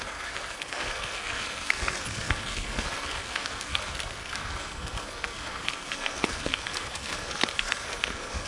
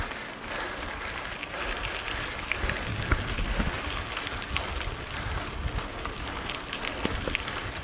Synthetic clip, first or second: first